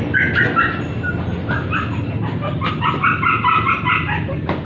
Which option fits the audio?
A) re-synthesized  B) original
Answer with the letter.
B